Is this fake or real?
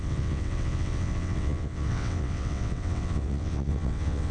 fake